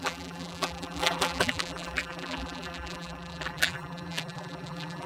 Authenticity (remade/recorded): remade